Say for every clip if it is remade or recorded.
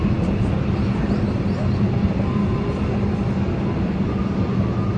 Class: recorded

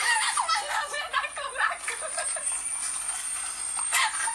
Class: recorded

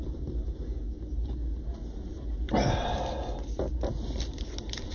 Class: recorded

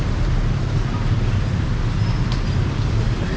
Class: recorded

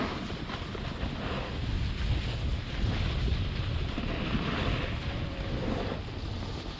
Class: recorded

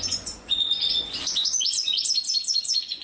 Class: remade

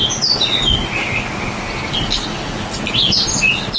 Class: recorded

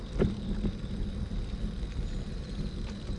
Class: recorded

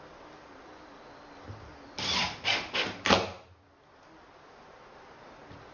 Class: recorded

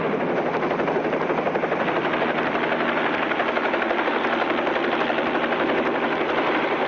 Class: recorded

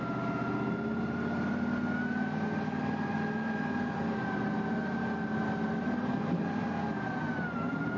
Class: recorded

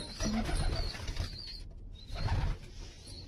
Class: recorded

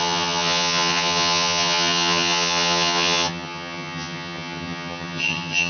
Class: remade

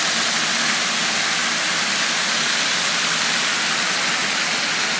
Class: recorded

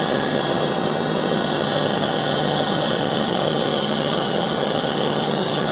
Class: remade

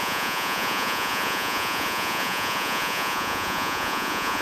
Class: remade